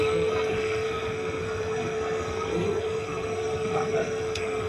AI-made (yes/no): yes